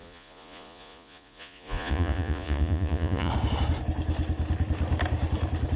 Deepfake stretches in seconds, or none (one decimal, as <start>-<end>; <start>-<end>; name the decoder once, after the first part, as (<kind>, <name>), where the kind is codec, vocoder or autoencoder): 0.0-3.3 (vocoder, Vocos)